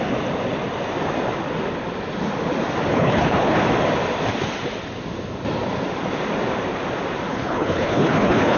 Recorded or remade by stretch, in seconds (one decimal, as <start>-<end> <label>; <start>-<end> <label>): 0.0-2.9 recorded; 2.9-3.6 remade; 3.6-7.3 recorded; 7.3-8.6 remade